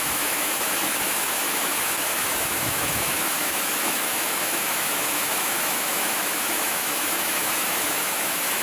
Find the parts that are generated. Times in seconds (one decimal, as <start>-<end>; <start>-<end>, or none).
0.0-8.6